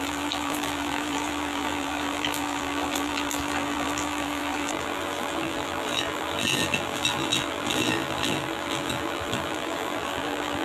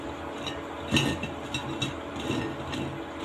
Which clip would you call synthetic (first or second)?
first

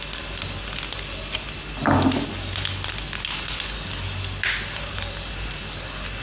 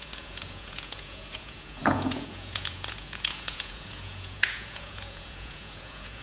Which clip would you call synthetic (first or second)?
second